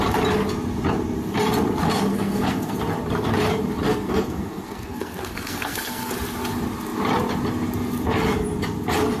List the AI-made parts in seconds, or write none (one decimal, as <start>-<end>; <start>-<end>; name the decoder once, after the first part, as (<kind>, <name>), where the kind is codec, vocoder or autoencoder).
2.1-2.8 (codec, SNAC); 3.9-6.1